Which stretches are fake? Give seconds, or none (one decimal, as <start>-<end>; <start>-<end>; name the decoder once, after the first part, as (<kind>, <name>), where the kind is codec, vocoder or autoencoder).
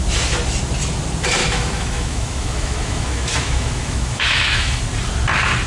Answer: 1.4-4.8 (autoencoder, DAC-VAE)